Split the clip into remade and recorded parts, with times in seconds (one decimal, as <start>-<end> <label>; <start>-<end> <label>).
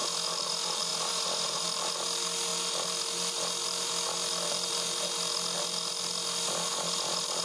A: 0.0-0.9 recorded; 0.9-1.9 remade; 1.9-2.5 recorded; 2.5-5.1 remade; 5.1-7.4 recorded